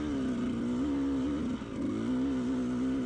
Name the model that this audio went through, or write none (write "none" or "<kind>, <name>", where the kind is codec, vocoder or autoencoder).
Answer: none